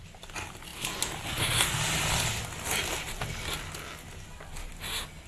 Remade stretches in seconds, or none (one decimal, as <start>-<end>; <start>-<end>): none